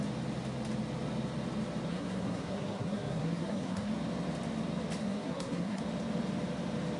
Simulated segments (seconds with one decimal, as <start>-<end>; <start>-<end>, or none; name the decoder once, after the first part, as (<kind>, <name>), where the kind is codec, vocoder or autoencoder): 1.9-3.9 (codec, SNAC); 5.0-5.8

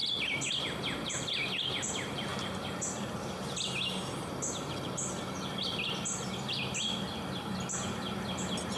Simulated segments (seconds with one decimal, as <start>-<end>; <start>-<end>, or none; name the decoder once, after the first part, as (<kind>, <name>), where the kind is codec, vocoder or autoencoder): none

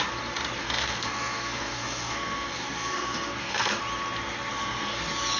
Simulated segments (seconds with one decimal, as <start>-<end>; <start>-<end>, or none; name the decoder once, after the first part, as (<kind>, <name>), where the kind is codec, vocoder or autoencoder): 0.6-3.8 (codec, SNAC); 4.5-5.0